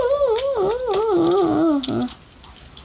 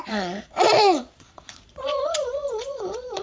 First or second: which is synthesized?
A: second